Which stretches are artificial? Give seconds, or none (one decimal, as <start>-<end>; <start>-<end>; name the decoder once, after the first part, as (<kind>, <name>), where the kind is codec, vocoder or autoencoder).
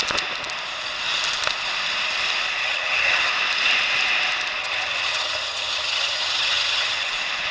2.6-3.3 (vocoder, HiFi-GAN); 4.6-7.1